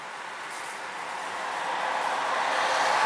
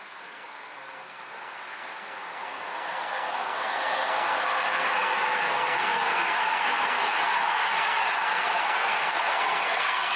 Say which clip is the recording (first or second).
first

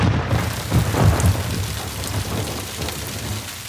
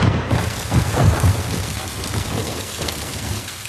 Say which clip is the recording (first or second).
first